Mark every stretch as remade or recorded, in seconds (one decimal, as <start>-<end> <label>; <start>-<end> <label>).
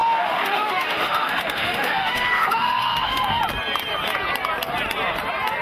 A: 0.0-3.4 remade; 3.4-5.6 recorded